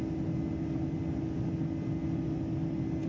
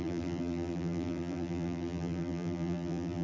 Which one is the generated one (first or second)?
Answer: second